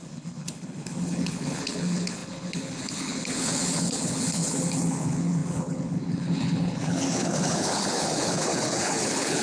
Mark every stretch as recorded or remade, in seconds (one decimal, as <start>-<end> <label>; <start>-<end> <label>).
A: 0.0-9.4 remade